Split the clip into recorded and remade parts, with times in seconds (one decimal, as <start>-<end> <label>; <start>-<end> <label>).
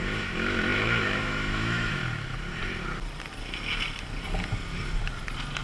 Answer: 0.0-2.0 remade; 2.0-5.6 recorded